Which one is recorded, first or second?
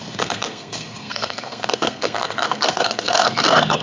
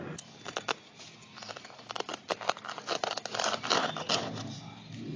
second